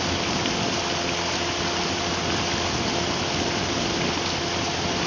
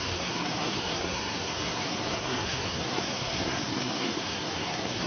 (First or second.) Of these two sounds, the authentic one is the first